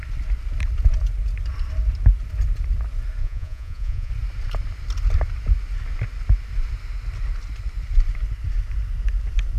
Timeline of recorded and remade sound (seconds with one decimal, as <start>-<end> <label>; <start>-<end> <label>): 0.0-3.2 recorded; 3.2-4.1 remade; 4.1-9.6 recorded